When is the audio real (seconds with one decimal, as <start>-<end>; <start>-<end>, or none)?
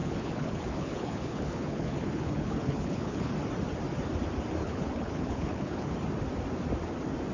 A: 3.3-4.6; 5.9-7.3